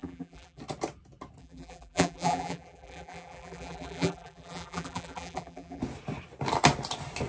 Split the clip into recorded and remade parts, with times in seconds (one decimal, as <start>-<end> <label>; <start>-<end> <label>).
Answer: 0.0-0.6 remade; 0.6-1.4 recorded; 1.4-5.8 remade; 5.8-7.3 recorded

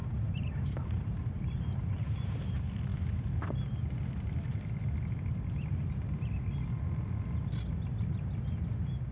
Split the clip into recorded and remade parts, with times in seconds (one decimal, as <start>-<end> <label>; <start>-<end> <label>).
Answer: 0.0-2.5 remade; 2.5-9.1 recorded